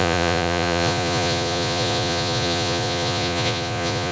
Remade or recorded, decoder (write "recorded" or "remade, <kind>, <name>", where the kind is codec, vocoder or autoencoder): remade, vocoder, Vocos